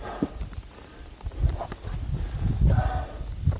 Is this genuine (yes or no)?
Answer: yes